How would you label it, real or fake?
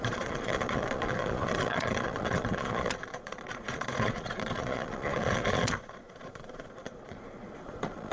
fake